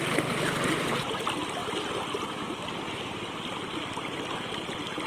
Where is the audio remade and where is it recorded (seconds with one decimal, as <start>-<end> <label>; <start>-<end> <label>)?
0.0-5.1 recorded